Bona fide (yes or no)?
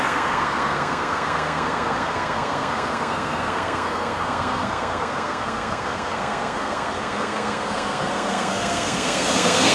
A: no